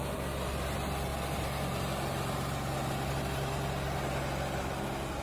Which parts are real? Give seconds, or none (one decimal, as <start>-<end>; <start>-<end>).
0.0-5.2